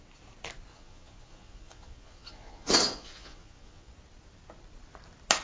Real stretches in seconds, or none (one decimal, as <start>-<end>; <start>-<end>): 0.0-0.7; 3.9-5.4